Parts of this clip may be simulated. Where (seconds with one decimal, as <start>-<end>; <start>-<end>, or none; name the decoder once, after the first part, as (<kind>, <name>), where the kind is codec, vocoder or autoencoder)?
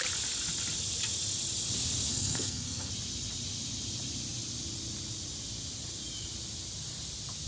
2.1-2.9 (codec, SNAC)